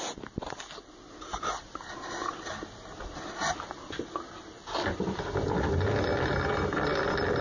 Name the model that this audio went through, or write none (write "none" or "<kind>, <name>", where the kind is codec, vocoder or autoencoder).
none